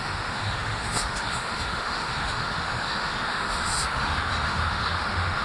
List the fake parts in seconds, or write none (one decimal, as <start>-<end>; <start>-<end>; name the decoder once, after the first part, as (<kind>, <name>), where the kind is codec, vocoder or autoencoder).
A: 0.0-5.4 (autoencoder, DAC-VAE)